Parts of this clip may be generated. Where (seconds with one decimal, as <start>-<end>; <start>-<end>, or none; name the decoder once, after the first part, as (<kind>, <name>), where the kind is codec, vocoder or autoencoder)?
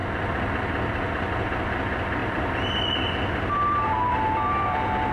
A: 0.0-1.3 (vocoder, BigVGAN v2); 2.2-5.1